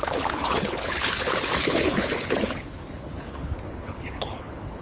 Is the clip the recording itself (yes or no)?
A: no